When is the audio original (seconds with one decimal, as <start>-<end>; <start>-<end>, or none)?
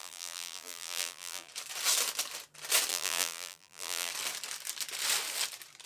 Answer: 1.5-2.9; 4.1-5.9